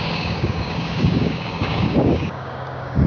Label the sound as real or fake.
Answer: fake